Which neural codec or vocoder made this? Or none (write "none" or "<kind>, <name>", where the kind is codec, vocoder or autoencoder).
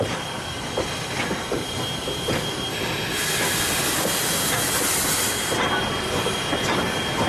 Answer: none